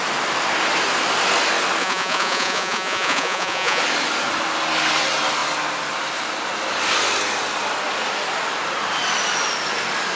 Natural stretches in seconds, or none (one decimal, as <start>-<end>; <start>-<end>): 0.0-1.8; 3.8-10.2